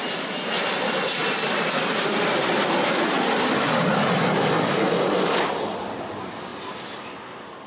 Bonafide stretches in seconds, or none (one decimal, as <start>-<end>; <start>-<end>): 0.0-7.7